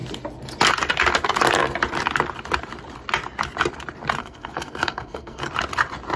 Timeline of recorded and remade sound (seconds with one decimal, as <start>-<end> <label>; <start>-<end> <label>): 0.0-4.2 recorded; 4.2-5.5 remade; 5.5-6.2 recorded